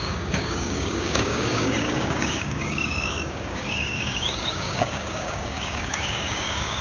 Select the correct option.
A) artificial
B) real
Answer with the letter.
A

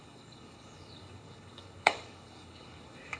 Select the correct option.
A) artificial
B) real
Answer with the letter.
A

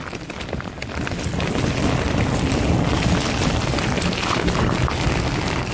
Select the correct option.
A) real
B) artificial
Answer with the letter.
A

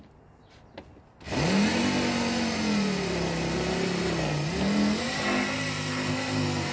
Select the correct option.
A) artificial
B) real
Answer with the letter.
B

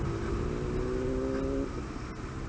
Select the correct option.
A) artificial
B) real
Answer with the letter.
B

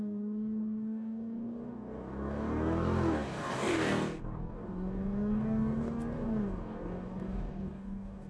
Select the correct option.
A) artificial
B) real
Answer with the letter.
A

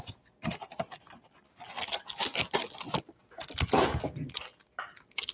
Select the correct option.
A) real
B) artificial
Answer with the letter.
A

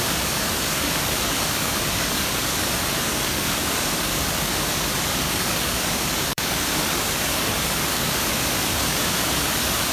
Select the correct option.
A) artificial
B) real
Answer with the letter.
A